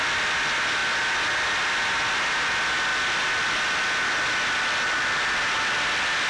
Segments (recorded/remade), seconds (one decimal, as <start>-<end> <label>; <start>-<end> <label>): 0.0-6.3 recorded